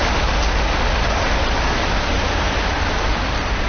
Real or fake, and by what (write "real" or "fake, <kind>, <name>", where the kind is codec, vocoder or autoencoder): real